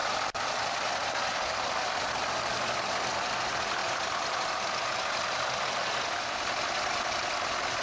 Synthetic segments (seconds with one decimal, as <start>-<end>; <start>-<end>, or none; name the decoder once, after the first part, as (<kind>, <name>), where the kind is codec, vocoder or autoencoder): none